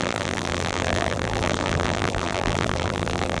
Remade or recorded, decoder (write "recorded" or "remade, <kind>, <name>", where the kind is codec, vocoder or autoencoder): remade, vocoder, BigVGAN v2